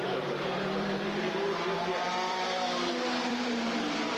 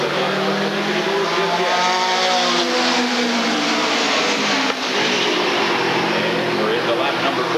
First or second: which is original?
second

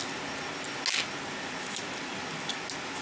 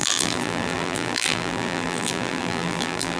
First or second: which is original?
first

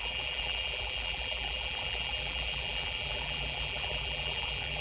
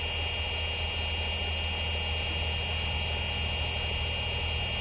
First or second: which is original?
second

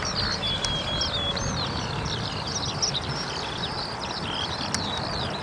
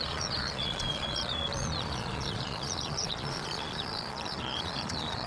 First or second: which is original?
first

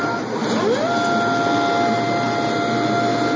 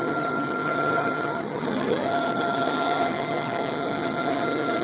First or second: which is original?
first